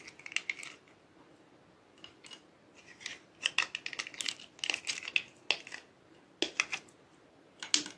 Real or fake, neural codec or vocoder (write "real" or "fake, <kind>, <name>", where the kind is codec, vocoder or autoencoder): real